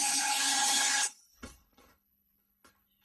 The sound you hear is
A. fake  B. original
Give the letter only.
A